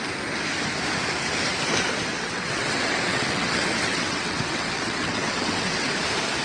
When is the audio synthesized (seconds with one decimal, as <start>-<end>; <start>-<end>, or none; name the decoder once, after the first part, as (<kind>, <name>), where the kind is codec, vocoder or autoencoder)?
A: 2.1-5.9 (vocoder, WaveNeXt)

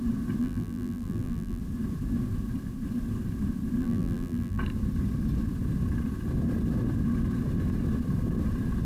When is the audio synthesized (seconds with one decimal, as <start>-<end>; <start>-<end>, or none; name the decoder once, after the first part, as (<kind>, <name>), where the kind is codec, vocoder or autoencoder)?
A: 0.4-1.6 (vocoder, BigVGAN v2); 3.8-4.6

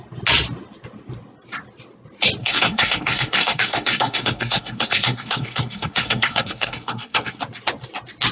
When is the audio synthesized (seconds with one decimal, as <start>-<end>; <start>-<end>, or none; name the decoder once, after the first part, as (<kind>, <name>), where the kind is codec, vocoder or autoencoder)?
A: 2.4-7.4 (codec, SNAC)

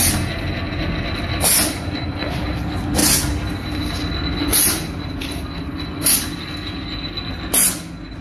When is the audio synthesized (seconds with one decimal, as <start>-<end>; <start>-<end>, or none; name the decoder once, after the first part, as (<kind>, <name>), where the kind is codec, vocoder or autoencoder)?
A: none

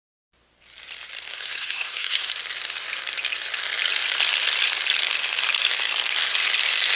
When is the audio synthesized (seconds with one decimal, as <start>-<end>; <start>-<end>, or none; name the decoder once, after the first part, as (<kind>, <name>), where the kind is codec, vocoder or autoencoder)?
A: 1.3-2.3 (codec, SNAC)

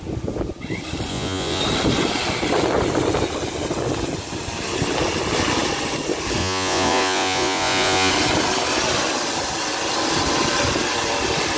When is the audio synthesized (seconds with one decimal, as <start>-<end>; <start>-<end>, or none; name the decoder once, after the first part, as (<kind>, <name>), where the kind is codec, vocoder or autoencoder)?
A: 1.1-1.6 (vocoder, Vocos); 6.4-8.1

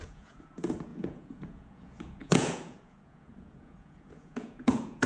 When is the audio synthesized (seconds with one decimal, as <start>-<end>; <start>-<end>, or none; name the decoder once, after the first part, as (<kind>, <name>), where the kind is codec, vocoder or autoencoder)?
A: 0.0-5.1 (vocoder, Vocos)